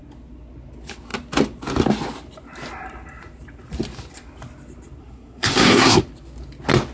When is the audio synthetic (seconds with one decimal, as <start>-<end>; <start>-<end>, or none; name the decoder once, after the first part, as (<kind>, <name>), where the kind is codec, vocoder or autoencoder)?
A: 5.0-6.0 (codec, SNAC)